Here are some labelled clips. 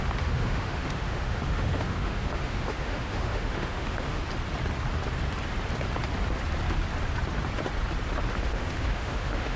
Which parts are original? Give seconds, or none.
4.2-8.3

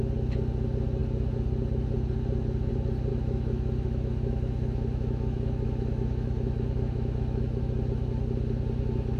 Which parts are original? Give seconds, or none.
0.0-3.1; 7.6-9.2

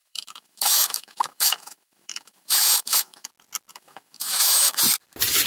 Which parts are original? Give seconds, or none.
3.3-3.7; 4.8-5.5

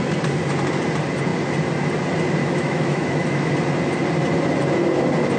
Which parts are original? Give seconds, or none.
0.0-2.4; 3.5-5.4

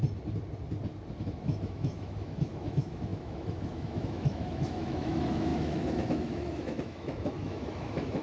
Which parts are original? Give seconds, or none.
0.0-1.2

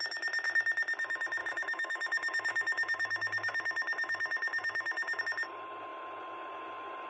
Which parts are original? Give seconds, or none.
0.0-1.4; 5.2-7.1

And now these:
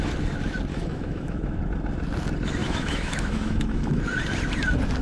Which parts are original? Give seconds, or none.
0.0-0.7; 1.6-2.6; 4.0-5.0

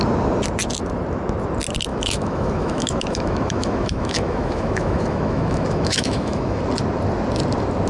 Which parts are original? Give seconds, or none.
0.0-1.9; 6.6-7.9